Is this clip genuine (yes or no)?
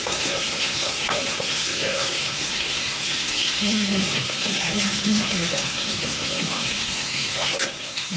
no